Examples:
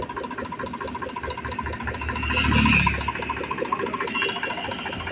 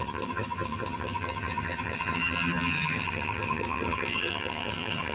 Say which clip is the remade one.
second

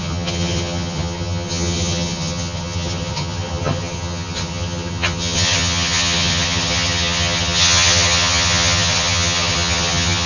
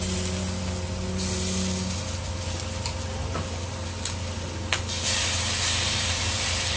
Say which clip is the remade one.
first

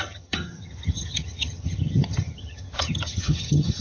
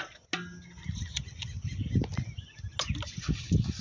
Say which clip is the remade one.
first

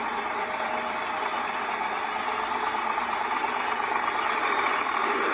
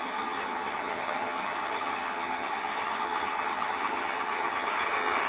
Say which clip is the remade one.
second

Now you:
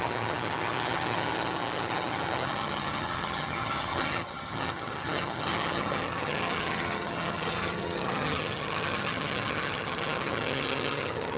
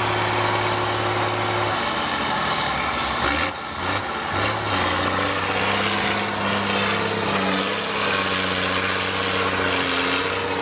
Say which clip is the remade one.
first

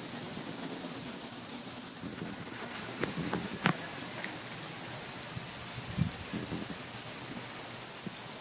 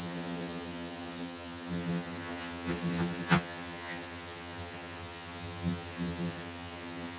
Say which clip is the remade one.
second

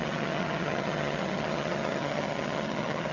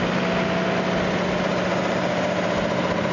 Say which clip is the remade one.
first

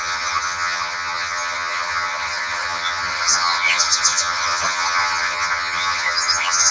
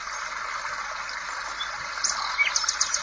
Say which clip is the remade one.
first